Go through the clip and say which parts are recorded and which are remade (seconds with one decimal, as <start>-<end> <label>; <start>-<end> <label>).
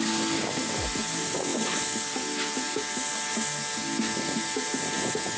0.0-5.4 recorded